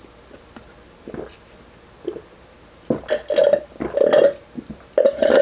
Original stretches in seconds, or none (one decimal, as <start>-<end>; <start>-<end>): 0.0-5.4